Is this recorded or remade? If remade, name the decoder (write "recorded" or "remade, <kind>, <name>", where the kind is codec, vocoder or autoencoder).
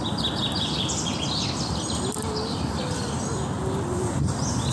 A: recorded